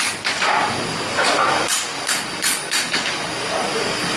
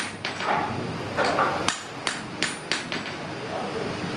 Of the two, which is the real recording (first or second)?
second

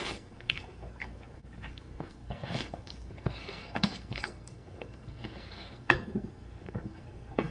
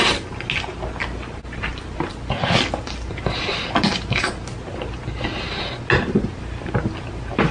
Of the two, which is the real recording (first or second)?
second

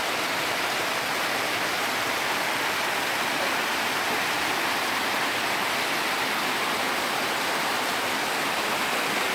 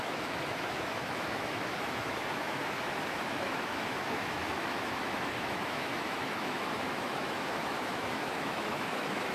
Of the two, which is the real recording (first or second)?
first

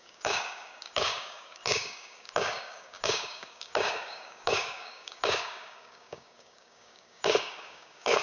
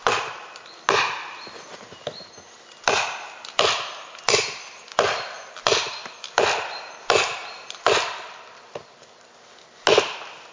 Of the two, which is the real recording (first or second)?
second